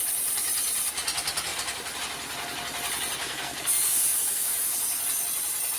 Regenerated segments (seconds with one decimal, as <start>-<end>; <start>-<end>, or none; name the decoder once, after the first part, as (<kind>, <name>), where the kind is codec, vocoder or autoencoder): 3.2-5.0 (codec, SNAC)